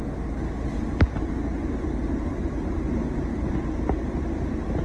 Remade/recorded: recorded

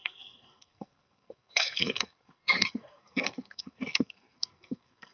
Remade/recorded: remade